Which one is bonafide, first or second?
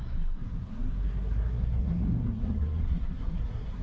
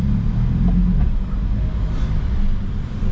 second